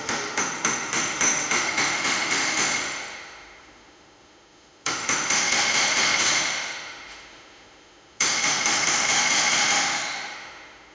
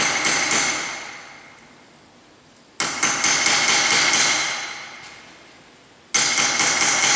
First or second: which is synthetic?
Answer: first